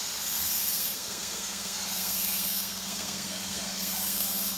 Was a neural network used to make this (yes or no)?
yes